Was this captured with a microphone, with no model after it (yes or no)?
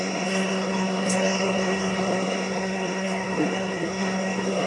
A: no